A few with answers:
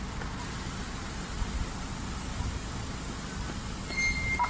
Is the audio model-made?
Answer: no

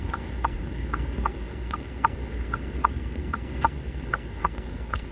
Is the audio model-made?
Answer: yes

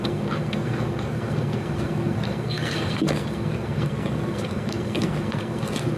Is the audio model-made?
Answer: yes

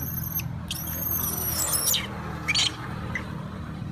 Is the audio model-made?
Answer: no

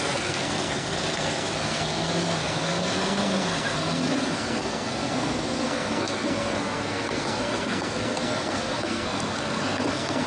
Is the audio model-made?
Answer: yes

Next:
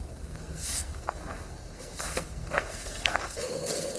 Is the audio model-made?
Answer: yes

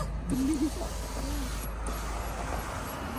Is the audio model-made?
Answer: no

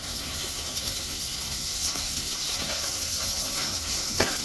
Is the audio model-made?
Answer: yes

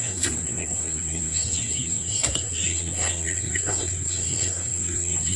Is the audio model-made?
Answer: yes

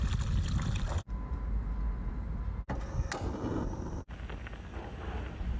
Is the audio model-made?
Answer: no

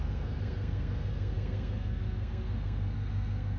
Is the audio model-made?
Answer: yes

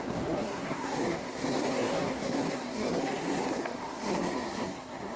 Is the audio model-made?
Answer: yes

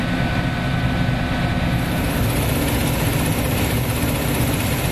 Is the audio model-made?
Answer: no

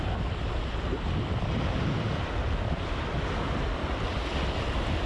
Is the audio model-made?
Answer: no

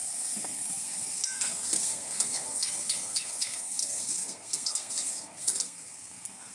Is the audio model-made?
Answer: yes